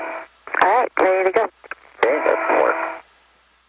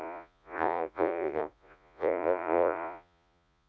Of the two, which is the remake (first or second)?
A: second